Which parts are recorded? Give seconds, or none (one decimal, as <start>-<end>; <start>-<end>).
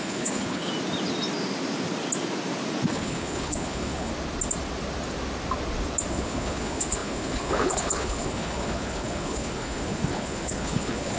0.7-2.9; 4.1-6.1